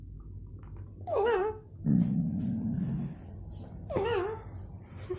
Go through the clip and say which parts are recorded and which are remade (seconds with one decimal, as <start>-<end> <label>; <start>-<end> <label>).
0.0-1.1 recorded; 1.1-1.8 remade; 1.8-5.2 recorded